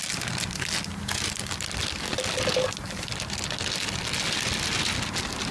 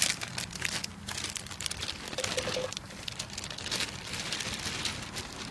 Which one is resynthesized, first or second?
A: second